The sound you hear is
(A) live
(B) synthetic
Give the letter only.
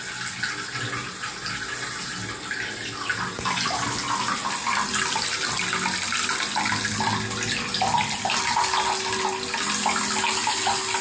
A